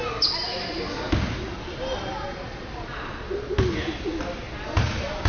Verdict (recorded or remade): recorded